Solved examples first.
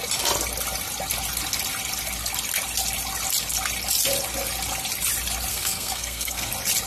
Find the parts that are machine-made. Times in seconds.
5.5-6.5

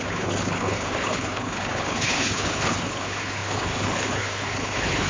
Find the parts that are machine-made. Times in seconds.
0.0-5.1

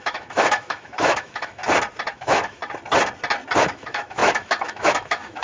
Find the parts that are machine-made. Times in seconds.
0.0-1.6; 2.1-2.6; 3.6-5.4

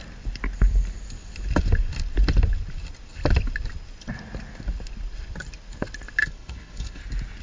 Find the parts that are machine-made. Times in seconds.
6.2-7.0

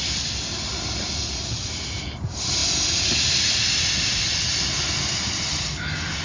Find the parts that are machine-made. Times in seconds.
none

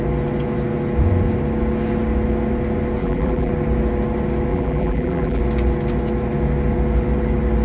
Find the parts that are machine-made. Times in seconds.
3.0-3.5; 4.5-5.4